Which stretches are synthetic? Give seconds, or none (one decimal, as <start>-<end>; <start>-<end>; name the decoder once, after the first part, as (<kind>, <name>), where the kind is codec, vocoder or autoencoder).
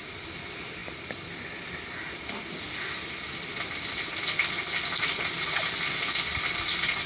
none